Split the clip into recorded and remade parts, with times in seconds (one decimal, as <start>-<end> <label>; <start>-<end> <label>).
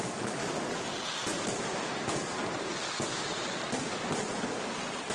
0.0-0.4 remade; 0.4-1.5 recorded; 1.5-1.9 remade; 1.9-5.1 recorded